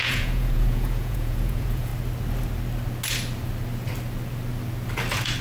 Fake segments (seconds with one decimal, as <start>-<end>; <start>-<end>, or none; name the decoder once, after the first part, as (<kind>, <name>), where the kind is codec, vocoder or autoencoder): 0.0-1.9 (vocoder, Vocos)